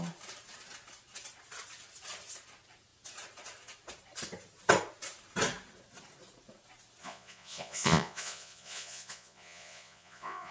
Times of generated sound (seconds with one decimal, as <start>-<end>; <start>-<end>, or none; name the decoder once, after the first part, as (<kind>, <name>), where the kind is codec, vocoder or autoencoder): 7.0-10.5 (vocoder, Vocos)